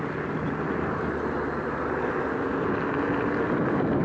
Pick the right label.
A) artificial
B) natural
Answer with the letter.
B